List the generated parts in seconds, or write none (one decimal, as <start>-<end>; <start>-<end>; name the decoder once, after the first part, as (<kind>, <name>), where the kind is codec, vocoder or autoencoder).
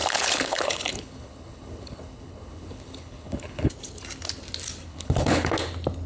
0.0-3.7 (codec, HILCodec); 4.9-5.5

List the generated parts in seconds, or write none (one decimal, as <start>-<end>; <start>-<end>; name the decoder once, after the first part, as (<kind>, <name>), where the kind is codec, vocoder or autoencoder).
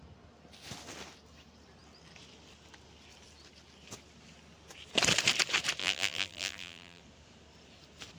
5.8-7.0 (vocoder, BigVGAN v2)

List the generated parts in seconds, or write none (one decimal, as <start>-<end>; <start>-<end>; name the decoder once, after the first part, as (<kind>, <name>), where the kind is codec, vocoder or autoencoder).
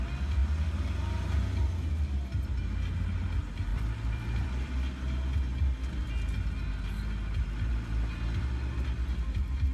3.7-4.5 (vocoder, BigVGAN v2)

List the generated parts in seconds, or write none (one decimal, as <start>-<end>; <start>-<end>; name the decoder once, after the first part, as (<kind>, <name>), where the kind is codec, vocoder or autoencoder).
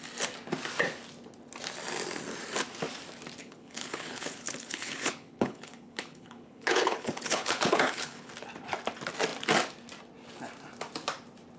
3.4-8.3 (codec, HILCodec)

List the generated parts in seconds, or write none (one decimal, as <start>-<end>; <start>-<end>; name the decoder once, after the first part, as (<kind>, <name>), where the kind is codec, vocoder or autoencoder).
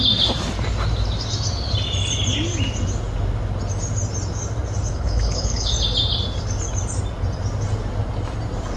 4.9-5.7 (codec, HILCodec)